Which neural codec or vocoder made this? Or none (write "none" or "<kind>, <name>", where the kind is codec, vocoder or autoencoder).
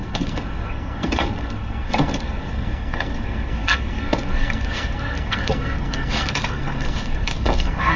codec, SNAC